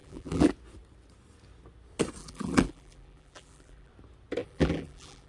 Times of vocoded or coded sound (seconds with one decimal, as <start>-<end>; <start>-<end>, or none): 0.0-0.5; 2.2-3.9; 4.4-5.3